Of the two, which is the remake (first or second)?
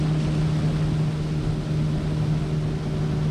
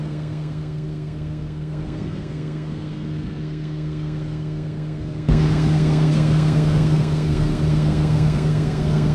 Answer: second